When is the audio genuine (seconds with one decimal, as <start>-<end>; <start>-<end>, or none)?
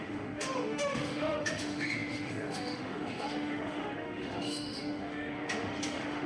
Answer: none